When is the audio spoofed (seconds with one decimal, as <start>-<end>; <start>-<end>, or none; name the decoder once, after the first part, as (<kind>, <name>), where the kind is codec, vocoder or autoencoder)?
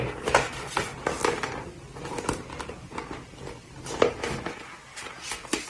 none